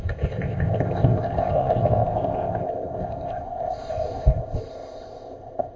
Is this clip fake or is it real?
fake